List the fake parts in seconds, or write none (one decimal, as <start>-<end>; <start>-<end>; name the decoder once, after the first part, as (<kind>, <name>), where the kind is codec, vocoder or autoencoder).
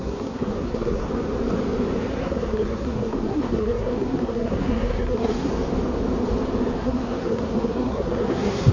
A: 0.0-1.1 (codec, SNAC); 2.1-5.5; 6.8-8.7